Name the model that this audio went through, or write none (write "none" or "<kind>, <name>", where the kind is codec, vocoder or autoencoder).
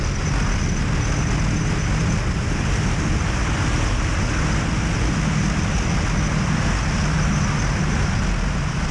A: none